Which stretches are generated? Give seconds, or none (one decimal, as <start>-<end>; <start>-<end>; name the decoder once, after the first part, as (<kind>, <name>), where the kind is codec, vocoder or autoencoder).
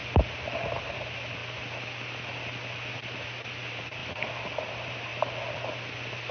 0.8-1.4 (vocoder, BigVGAN v2); 2.9-4.0; 4.6-5.1